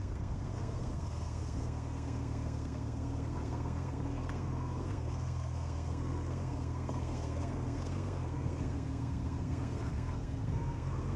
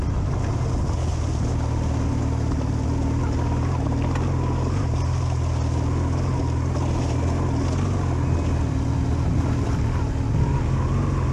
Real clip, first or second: second